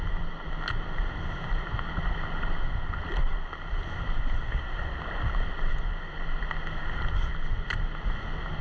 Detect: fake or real real